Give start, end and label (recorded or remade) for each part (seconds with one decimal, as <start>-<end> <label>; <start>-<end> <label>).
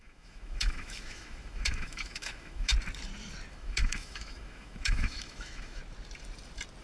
0.0-2.7 remade; 2.7-3.5 recorded; 3.5-5.8 remade; 5.8-6.8 recorded